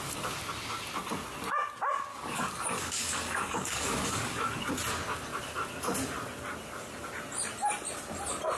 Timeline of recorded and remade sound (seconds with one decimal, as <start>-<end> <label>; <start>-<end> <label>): 0.0-2.1 recorded; 2.1-4.7 remade; 4.7-8.6 recorded